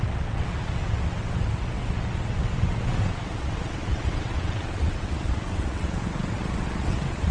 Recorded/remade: remade